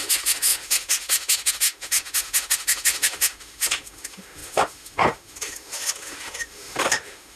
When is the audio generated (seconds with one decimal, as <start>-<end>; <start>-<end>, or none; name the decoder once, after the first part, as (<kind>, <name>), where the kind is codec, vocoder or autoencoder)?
0.0-7.4 (autoencoder, DAC-VAE)